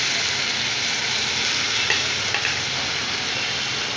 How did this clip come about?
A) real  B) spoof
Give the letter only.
A